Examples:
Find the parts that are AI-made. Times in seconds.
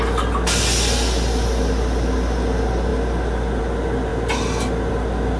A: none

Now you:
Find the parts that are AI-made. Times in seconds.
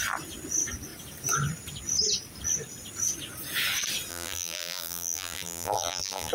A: 4.1-6.3 (vocoder, BigVGAN v2)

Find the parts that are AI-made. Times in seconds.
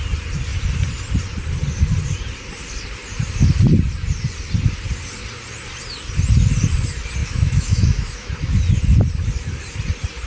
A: 7.2-8.3 (autoencoder, DAC-VAE)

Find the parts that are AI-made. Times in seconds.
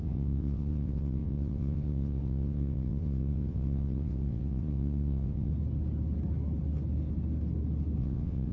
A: 0.0-5.5 (vocoder, WaveNeXt); 8.0-8.5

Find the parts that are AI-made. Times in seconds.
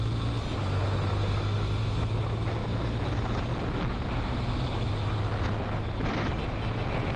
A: 2.6-3.1 (autoencoder, DAC-VAE)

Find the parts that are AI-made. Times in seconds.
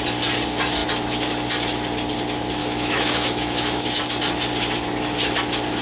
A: 2.6-4.0 (autoencoder, DAC-VAE)